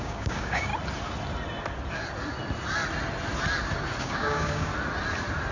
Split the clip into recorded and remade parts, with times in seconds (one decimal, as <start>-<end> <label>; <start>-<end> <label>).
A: 0.0-0.7 remade; 0.7-4.0 recorded; 4.0-4.7 remade; 4.7-5.5 recorded